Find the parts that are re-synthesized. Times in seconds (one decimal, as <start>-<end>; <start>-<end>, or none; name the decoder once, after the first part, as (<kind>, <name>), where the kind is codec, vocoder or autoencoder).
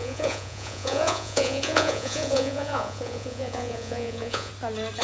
0.0-4.5 (vocoder, Vocos)